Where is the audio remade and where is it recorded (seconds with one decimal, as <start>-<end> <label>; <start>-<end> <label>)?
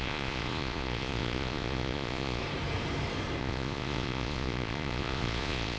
0.0-2.4 remade; 2.4-3.4 recorded; 3.4-5.8 remade